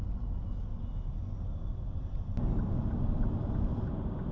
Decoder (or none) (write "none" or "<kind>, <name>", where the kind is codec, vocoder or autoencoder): none